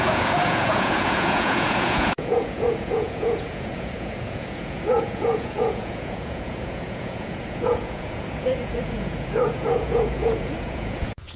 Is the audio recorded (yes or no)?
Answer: no